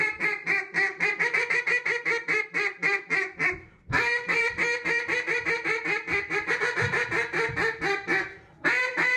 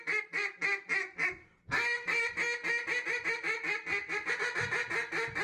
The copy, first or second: first